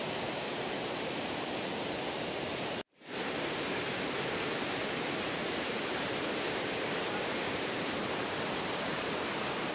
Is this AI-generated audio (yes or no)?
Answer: yes